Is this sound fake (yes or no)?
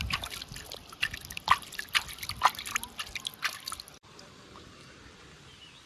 yes